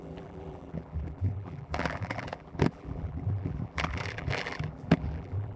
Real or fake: fake